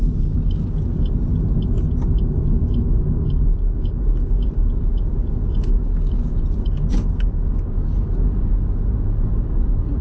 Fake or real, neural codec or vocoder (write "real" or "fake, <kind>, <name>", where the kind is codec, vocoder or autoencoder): real